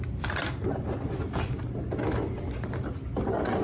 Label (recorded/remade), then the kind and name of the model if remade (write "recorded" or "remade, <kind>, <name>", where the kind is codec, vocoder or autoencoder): recorded